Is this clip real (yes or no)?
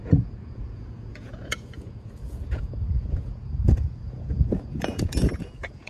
no